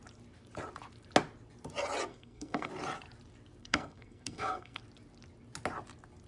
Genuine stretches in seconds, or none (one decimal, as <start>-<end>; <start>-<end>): 0.0-2.1; 2.7-3.6; 4.8-6.3